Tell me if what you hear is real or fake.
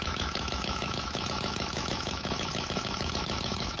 fake